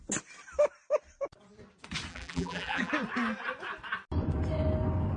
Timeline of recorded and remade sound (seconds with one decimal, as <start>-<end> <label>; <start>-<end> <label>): 0.0-2.1 recorded; 2.1-2.9 remade; 2.9-5.2 recorded